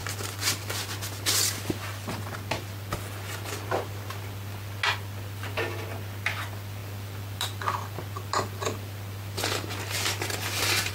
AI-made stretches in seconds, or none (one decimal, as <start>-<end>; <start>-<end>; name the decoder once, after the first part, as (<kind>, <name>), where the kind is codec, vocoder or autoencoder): 6.8-10.9 (vocoder, BigVGAN v2)